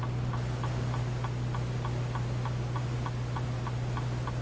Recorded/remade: recorded